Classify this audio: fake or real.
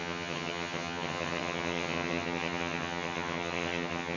fake